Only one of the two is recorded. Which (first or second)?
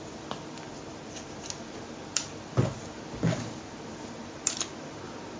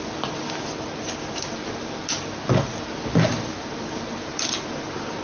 second